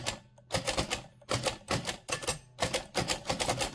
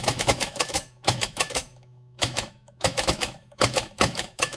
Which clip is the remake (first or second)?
second